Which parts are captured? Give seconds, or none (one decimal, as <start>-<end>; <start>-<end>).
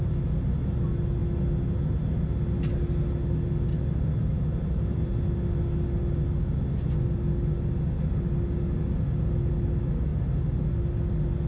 0.0-11.5